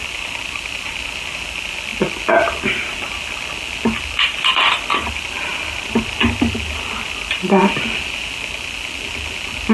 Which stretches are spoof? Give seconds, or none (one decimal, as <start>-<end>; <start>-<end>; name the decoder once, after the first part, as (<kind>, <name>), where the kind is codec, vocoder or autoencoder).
none